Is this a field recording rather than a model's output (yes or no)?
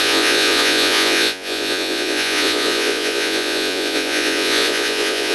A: no